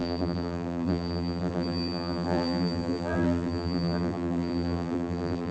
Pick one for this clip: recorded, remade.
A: remade